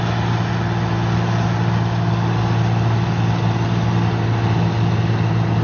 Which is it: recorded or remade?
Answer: recorded